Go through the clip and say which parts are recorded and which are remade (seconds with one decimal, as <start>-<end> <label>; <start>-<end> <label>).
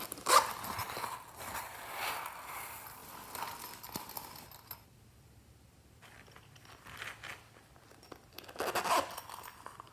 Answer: 0.0-9.9 recorded